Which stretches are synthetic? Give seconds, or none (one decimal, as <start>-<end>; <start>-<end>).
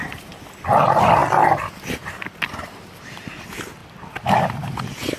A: none